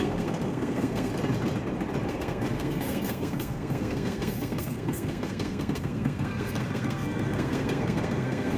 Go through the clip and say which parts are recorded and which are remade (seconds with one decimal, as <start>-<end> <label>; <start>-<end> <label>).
0.0-1.1 remade; 1.1-2.1 recorded; 2.1-8.6 remade